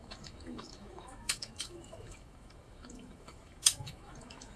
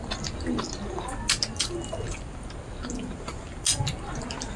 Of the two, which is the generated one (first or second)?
first